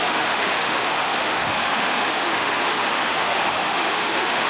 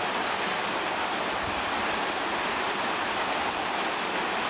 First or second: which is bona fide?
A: second